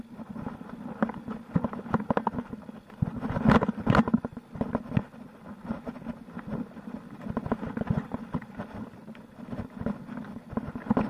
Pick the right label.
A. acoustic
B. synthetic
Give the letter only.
A